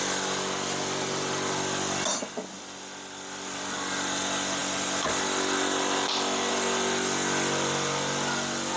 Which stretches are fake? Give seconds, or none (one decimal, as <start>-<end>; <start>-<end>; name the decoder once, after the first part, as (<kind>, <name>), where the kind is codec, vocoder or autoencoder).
none